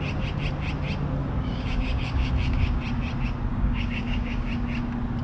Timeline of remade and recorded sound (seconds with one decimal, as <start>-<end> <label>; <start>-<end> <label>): 0.0-1.2 recorded; 1.2-2.8 remade; 2.8-3.5 recorded; 3.5-4.5 remade; 4.5-5.2 recorded